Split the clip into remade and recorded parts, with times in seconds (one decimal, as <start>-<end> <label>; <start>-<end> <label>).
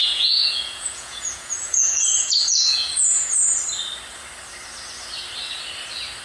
0.0-3.5 remade; 3.5-6.2 recorded